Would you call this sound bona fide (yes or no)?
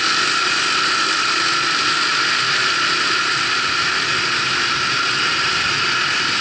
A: yes